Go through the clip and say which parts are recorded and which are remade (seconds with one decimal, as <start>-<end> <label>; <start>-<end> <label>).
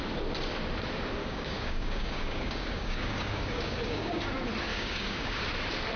0.0-1.2 recorded; 1.2-4.2 remade; 4.2-4.7 recorded; 4.7-5.4 remade; 5.4-6.0 recorded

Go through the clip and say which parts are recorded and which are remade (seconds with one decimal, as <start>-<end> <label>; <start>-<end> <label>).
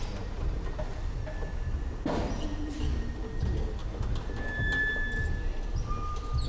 0.0-6.5 recorded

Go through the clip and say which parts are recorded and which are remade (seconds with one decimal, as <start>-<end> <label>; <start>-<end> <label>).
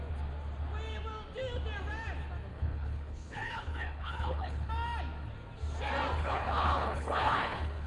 0.0-2.5 recorded; 2.5-4.7 remade; 4.7-6.2 recorded; 6.2-7.9 remade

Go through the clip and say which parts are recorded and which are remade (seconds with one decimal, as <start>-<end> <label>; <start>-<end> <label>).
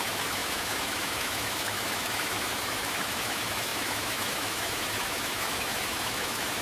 0.0-6.6 remade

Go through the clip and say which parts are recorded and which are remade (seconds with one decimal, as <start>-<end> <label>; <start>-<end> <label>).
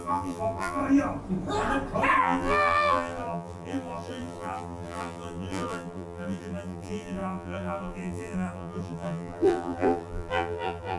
0.0-0.8 remade; 0.8-2.2 recorded; 2.2-11.0 remade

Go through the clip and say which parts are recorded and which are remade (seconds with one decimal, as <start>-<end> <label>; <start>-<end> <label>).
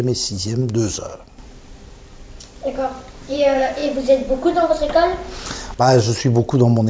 0.0-3.8 remade; 3.8-5.8 recorded; 5.8-6.9 remade